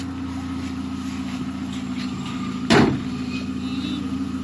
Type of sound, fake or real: real